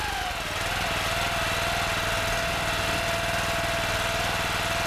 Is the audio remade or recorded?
recorded